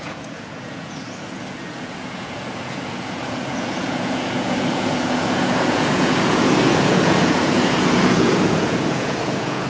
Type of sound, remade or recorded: remade